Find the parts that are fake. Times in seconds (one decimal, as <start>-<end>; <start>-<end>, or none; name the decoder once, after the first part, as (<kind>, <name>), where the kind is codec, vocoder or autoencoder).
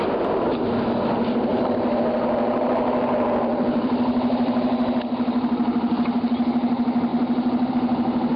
1.5-2.0 (vocoder, BigVGAN v2); 3.5-5.0; 7.1-7.7